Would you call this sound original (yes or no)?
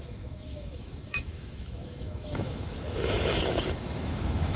no